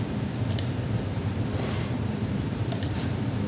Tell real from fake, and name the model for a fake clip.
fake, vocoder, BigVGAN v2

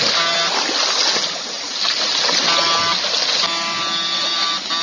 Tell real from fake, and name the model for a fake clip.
real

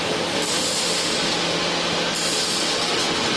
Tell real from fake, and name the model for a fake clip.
real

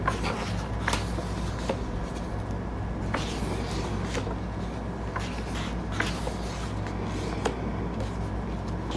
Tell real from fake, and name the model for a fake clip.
real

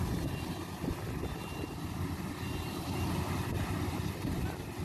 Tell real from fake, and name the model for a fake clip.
real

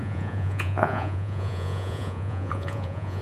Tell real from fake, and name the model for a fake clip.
fake, vocoder, Vocos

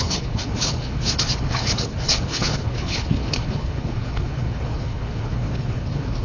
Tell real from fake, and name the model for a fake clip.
fake, codec, HILCodec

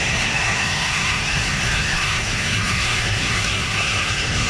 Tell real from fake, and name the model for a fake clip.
fake, codec, SNAC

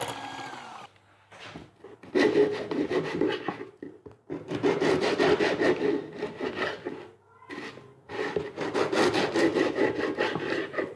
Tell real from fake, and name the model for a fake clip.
real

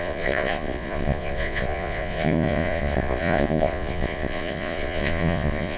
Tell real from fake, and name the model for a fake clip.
fake, vocoder, Vocos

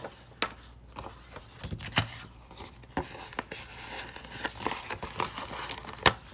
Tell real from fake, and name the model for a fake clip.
real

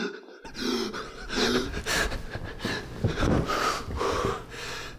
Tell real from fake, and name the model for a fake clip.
real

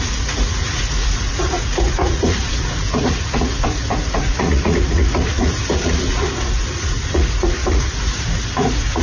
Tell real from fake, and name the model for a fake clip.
fake, vocoder, Vocos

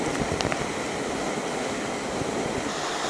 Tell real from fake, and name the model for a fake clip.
real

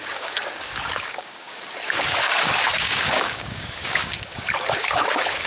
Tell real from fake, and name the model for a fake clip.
fake, codec, DAC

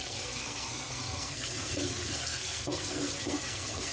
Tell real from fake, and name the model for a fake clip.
fake, codec, SNAC